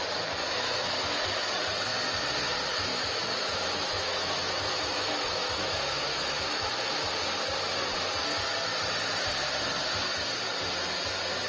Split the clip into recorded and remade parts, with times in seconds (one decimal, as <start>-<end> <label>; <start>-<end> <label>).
0.0-0.4 recorded; 0.4-1.5 remade; 1.5-2.9 recorded; 2.9-6.7 remade; 6.7-11.5 recorded